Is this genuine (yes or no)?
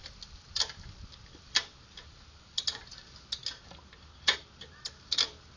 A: yes